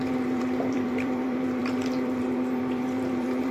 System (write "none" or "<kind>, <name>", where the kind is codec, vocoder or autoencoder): vocoder, BigVGAN v2